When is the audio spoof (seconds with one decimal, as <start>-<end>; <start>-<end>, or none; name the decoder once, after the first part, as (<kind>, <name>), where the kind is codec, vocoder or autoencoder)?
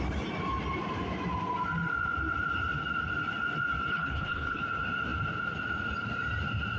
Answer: 3.9-4.6 (codec, HILCodec)